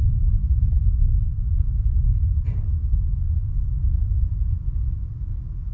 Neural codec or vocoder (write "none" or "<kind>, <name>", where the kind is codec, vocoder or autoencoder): none